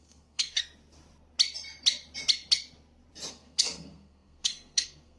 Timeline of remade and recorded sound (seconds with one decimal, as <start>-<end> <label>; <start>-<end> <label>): 0.0-0.6 remade; 0.6-3.3 recorded; 3.3-5.2 remade